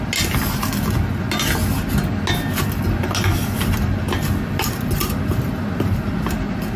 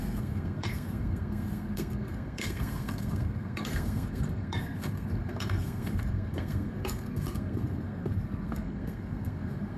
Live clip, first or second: first